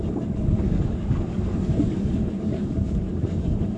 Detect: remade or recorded remade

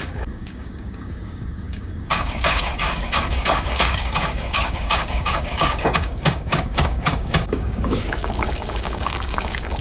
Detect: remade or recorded remade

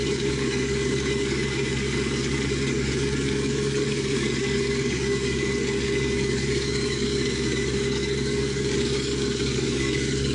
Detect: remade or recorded remade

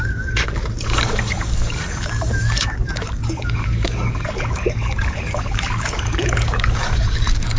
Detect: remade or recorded remade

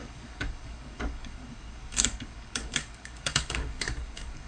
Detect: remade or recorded remade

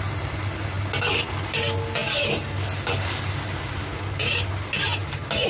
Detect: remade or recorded recorded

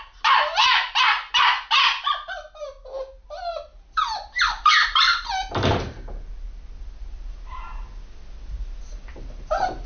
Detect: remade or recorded recorded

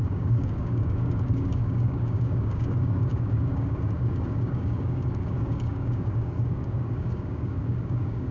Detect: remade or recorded remade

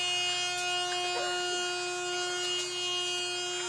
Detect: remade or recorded recorded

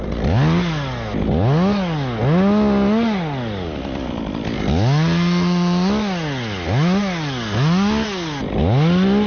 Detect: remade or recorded recorded